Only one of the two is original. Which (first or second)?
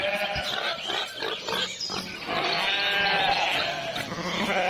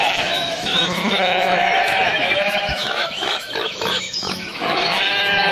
first